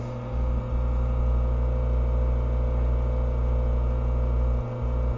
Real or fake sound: real